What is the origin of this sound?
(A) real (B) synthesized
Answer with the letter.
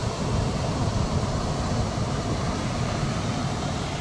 B